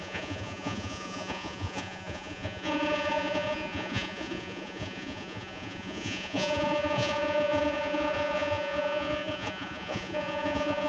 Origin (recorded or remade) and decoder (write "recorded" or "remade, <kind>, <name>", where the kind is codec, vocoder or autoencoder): remade, vocoder, Vocos